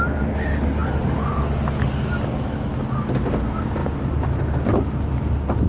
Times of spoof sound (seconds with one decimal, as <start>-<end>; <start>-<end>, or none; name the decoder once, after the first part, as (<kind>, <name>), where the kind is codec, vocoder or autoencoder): none